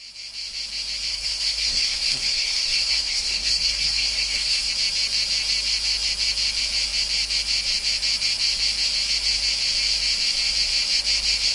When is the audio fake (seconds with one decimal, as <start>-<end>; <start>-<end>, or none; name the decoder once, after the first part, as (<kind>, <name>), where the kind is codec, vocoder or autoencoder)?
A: 1.1-4.7 (codec, SNAC)